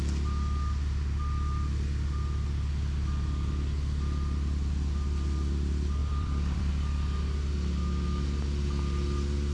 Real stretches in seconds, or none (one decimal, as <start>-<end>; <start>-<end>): 0.0-6.0; 6.7-9.5